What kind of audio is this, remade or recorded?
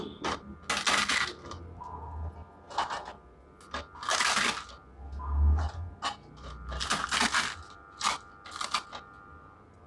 recorded